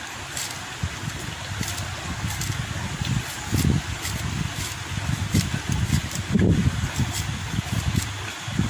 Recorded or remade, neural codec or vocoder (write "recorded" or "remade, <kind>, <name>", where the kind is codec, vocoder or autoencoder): recorded